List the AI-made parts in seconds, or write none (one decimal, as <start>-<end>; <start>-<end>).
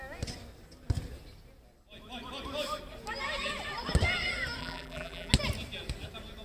4.6-5.3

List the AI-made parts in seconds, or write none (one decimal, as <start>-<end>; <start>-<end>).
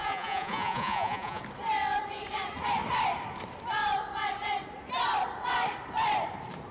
0.0-1.4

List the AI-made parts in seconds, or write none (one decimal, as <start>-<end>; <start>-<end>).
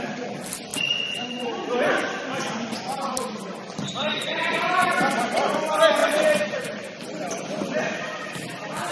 0.7-2.8; 4.0-4.9; 6.0-7.8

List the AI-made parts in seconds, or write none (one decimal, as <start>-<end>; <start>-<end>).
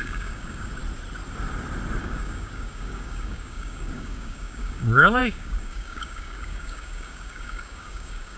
0.0-0.8; 2.0-8.4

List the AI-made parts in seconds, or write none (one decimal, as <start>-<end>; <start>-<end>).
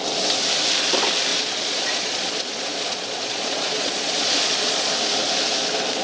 1.3-4.9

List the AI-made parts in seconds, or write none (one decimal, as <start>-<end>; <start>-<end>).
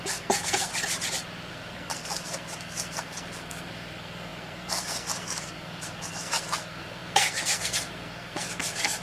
0.0-0.7; 1.5-9.0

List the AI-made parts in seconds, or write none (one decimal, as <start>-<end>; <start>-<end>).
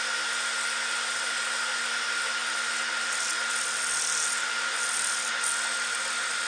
none